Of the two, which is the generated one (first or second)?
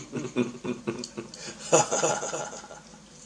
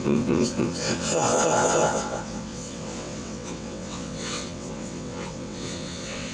second